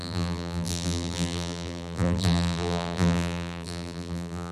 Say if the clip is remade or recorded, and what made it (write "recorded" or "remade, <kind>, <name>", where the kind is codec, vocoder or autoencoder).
remade, vocoder, BigVGAN v2